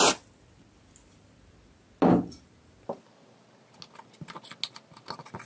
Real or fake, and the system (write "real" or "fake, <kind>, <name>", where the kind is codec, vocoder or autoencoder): real